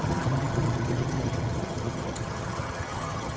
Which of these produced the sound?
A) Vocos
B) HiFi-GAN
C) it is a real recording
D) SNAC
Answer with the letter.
B